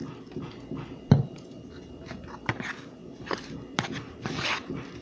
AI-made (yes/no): no